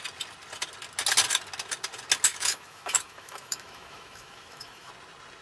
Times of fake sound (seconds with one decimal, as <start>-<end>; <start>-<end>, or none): 2.3-4.9